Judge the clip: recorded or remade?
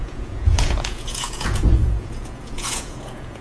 remade